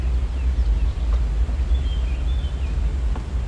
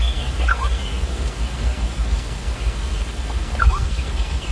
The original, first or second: first